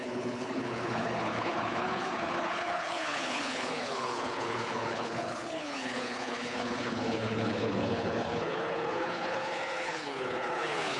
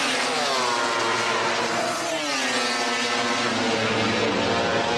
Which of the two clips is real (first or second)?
second